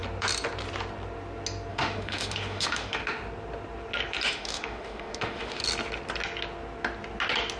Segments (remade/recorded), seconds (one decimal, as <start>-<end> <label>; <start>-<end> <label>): 0.0-1.7 recorded; 1.7-3.2 remade; 3.2-4.3 recorded; 4.3-5.6 remade; 5.6-7.6 recorded